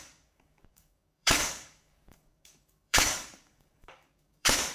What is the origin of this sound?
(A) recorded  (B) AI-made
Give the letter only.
B